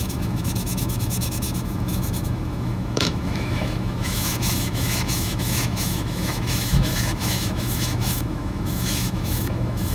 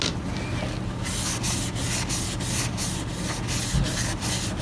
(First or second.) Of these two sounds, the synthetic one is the first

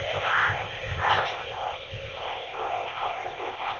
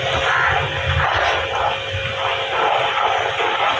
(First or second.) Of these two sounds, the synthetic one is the first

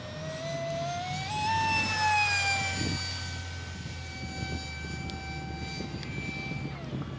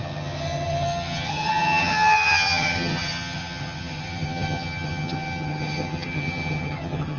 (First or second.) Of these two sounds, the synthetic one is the second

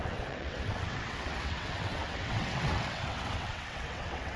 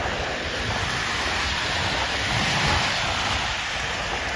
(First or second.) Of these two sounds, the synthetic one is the first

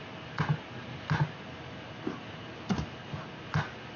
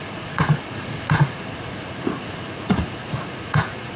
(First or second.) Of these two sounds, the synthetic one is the second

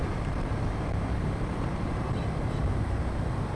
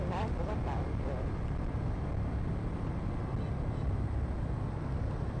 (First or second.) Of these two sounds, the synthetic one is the first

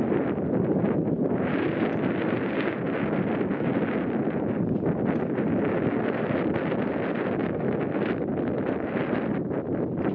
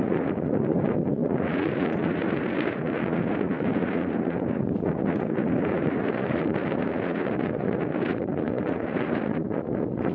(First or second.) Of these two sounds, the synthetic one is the second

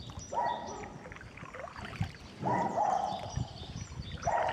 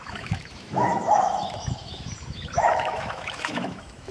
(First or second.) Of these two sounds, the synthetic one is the second